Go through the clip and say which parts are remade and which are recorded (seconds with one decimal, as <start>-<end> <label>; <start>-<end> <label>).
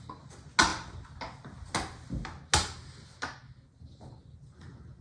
0.0-5.0 recorded